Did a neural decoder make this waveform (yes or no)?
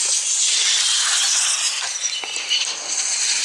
no